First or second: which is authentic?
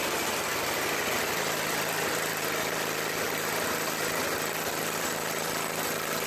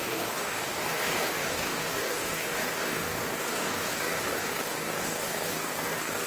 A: first